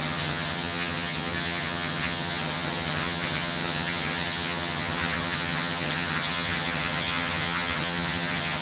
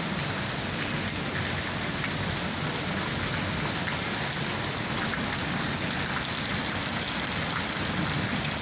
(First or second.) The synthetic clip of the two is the first